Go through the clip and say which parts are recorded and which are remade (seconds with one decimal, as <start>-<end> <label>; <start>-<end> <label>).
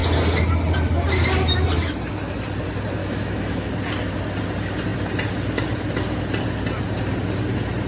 0.0-3.0 recorded; 3.0-3.7 remade; 3.7-7.9 recorded